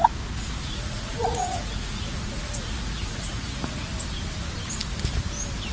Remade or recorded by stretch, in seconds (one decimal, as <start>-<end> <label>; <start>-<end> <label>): 0.0-0.6 recorded; 0.6-3.8 remade; 3.8-5.7 recorded